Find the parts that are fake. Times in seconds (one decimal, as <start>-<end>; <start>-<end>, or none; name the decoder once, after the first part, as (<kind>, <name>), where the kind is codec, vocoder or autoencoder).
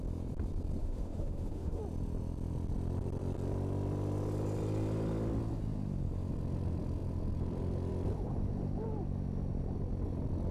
0.8-1.8 (autoencoder, DAC-VAE)